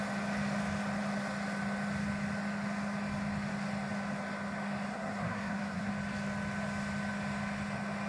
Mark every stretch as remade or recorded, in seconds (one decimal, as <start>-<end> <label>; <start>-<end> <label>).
0.0-4.9 recorded; 4.9-5.9 remade; 5.9-8.1 recorded